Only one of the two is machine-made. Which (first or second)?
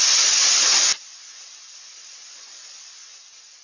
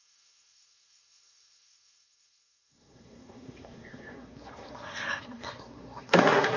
second